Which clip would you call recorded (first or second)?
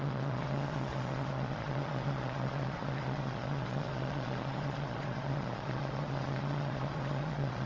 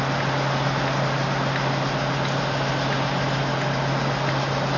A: second